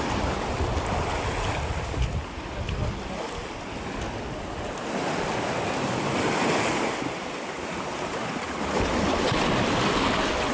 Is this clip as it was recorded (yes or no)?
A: yes